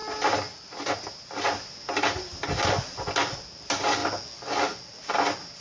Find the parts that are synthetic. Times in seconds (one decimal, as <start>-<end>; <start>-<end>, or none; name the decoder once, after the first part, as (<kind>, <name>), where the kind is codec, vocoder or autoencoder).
none